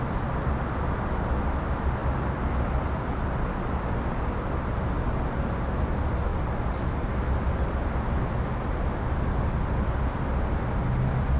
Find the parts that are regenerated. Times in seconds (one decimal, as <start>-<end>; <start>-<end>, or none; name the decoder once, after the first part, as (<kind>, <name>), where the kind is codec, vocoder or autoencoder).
6.3-7.1 (vocoder, BigVGAN v2)